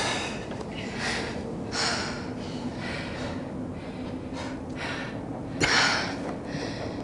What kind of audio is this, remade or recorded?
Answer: recorded